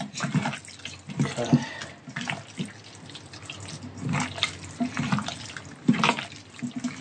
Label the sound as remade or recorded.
recorded